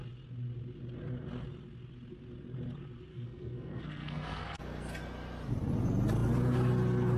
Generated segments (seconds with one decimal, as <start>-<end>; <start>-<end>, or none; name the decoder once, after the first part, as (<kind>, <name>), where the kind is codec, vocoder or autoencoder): 3.1-4.9 (codec, SNAC)

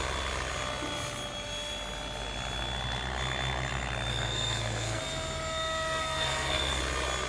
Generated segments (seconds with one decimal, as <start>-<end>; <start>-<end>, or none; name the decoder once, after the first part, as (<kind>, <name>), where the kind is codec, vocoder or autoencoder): 4.1-5.0 (codec, SNAC); 6.0-6.8